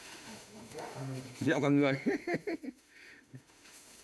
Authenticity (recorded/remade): remade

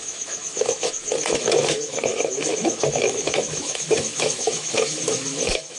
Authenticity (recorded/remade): remade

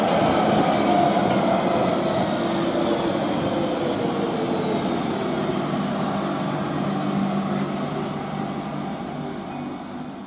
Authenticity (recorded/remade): recorded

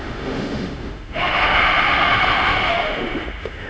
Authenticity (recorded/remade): remade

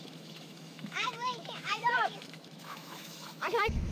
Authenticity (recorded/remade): remade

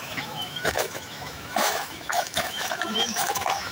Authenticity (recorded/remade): remade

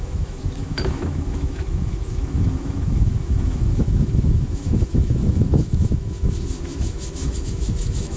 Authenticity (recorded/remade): remade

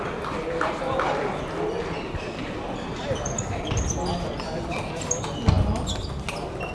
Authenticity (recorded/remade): recorded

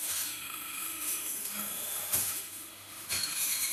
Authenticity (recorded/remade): remade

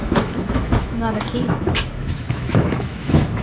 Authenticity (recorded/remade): remade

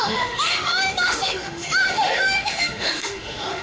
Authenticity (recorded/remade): remade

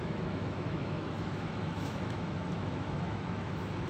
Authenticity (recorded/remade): remade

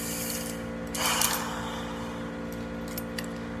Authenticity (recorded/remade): recorded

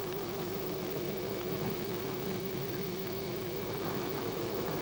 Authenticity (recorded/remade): remade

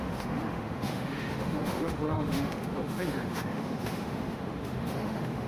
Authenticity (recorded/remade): remade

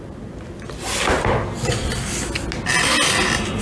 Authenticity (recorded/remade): recorded